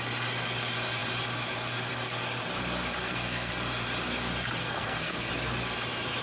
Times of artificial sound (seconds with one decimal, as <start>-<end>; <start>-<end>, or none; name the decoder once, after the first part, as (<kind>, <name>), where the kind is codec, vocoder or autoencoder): 3.0-3.5 (codec, SNAC); 4.6-5.3